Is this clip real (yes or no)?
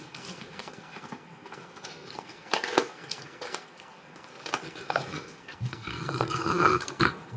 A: no